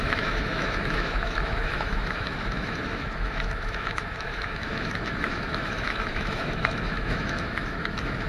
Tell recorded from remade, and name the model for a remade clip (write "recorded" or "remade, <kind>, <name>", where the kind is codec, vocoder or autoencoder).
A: remade, autoencoder, DAC-VAE